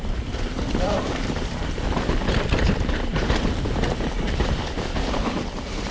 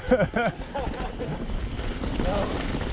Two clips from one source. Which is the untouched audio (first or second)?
second